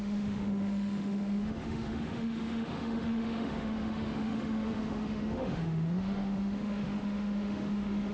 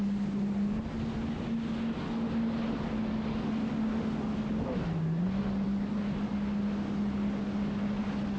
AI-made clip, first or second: first